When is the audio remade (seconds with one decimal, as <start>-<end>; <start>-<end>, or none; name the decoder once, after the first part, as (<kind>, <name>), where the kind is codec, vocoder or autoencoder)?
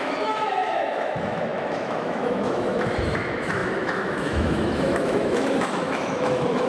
0.0-6.7 (autoencoder, DAC-VAE)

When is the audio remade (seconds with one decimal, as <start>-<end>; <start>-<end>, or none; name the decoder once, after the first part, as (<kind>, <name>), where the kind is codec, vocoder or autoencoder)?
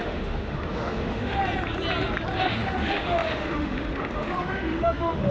0.0-1.4 (autoencoder, DAC-VAE); 2.4-5.3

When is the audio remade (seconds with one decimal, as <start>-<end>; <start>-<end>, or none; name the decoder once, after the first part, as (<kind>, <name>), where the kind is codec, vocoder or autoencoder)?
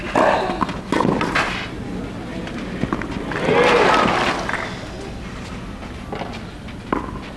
none